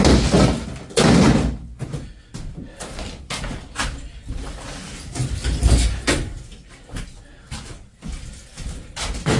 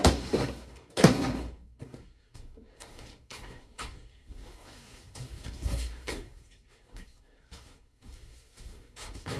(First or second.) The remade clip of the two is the second